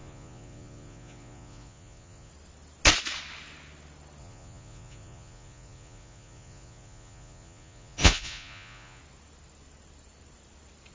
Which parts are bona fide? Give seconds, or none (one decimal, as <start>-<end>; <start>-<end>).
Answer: 2.3-4.2; 9.0-10.9